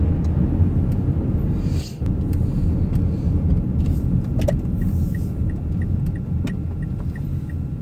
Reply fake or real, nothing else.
real